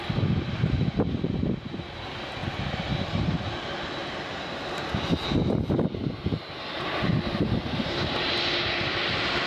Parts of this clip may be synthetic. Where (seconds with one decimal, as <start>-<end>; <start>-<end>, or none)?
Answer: none